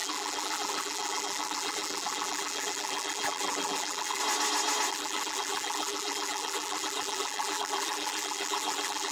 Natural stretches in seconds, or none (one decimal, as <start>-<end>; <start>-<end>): 4.2-4.9